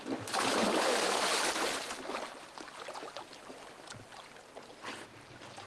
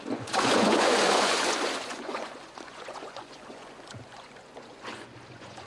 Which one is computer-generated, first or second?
second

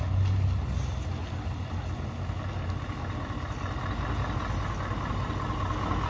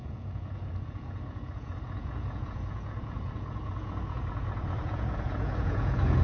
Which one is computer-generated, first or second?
second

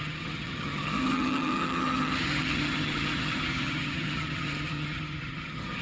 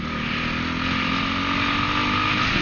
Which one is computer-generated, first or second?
first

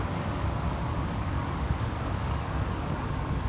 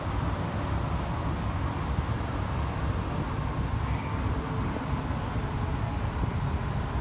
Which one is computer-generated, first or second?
first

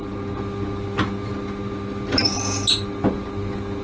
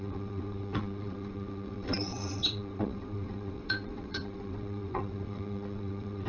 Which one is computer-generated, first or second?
second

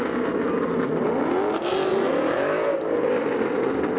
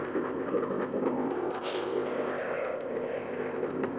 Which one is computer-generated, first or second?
second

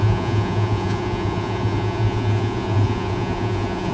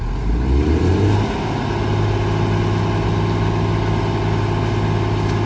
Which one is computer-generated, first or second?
first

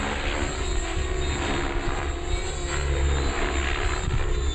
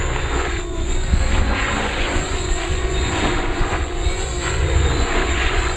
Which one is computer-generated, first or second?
second